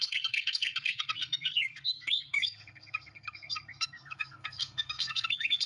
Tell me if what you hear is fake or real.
fake